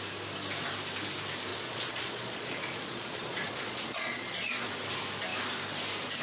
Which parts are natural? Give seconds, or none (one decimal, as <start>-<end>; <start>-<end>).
0.0-1.5; 4.7-6.2